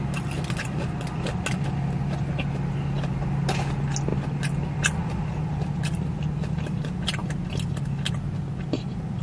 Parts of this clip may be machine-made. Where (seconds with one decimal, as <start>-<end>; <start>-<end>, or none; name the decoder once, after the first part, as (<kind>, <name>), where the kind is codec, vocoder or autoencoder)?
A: none